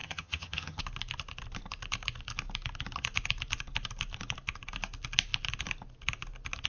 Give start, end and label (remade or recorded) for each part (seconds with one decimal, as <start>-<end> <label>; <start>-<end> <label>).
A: 0.0-0.8 remade; 0.8-6.7 recorded